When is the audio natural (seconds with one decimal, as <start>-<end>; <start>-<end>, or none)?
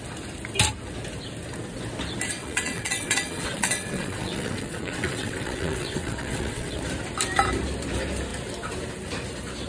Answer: 0.0-2.4; 6.8-9.7